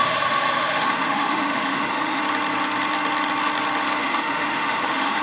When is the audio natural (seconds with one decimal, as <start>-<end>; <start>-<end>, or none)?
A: 2.2-4.0